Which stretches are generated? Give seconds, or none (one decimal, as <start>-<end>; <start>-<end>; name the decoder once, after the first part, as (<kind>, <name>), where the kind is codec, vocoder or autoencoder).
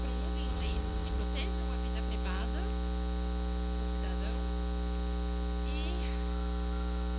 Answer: 0.5-1.2 (vocoder, WaveNeXt)